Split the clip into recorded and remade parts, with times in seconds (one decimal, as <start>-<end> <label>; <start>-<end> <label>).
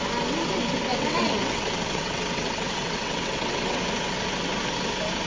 0.0-0.9 recorded; 0.9-3.8 remade; 3.8-5.3 recorded